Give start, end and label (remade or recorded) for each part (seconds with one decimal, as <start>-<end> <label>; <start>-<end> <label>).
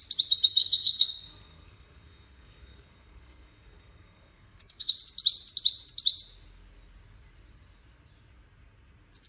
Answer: 0.0-0.6 recorded; 0.6-4.9 remade; 4.9-9.3 recorded